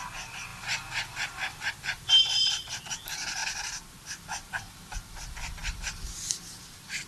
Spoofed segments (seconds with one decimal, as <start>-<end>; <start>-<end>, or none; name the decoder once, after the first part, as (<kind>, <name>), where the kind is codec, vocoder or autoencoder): 0.0-3.4 (vocoder, BigVGAN v2); 3.9-7.1